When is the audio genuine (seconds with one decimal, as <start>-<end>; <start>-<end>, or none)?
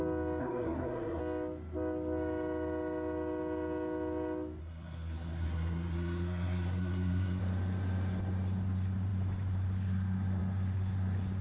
0.0-0.4; 1.2-4.6; 7.4-11.4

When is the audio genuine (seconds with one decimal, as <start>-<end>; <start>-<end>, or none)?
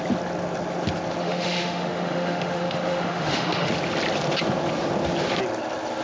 0.0-1.2; 3.7-6.0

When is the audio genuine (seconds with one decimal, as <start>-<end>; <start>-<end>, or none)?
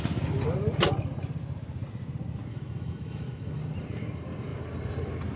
0.0-2.5; 3.6-5.4